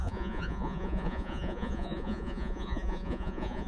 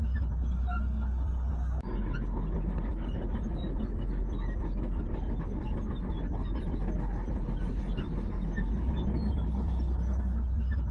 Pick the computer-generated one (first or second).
first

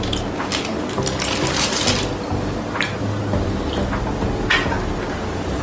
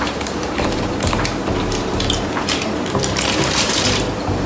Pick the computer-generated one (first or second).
second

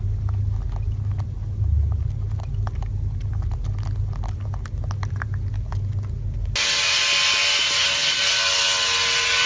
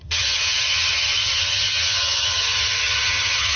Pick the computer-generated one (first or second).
second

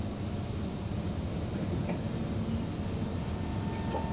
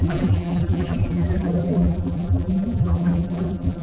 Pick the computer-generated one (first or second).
second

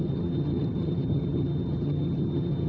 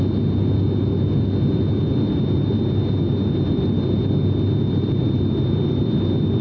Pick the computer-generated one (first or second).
first